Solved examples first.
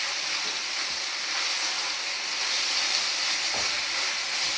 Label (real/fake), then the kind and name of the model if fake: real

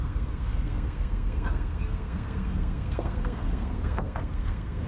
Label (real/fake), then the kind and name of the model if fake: fake, codec, SNAC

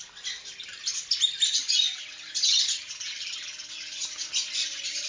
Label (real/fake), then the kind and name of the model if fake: real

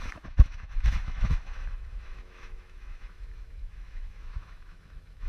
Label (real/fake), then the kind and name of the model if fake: fake, autoencoder, DAC-VAE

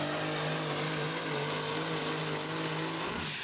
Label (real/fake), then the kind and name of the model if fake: real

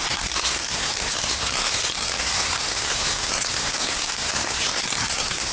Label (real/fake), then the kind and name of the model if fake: fake, codec, SNAC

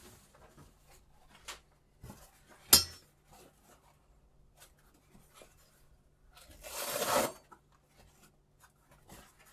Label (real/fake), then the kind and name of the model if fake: real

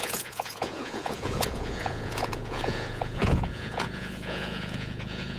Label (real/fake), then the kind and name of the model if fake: fake, vocoder, Vocos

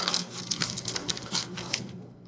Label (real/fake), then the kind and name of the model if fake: fake, codec, SNAC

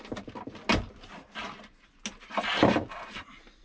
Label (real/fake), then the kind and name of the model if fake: real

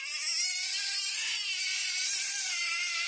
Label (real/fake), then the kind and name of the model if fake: real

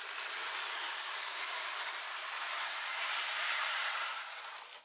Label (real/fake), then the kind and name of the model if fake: real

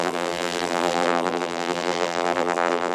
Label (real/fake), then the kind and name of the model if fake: fake, vocoder, BigVGAN v2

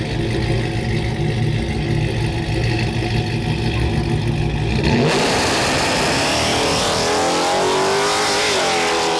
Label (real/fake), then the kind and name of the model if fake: real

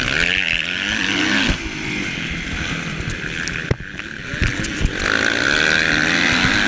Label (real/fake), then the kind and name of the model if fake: real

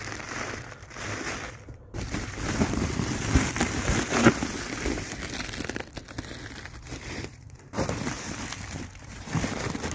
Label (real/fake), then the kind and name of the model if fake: fake, vocoder, BigVGAN v2